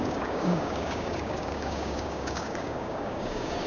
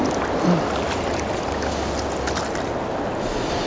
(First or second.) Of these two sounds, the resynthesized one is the first